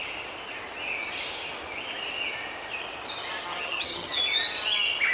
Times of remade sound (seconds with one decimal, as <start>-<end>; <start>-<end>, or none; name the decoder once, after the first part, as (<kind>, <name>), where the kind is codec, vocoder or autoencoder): 3.5-4.2 (vocoder, HiFi-GAN)